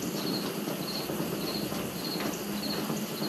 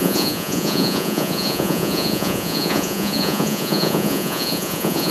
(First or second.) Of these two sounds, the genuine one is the first